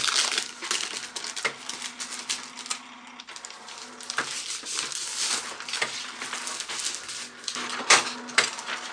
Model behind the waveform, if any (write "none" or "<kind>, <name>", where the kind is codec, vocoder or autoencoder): none